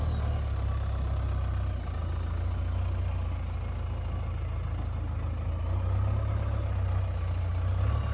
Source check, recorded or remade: recorded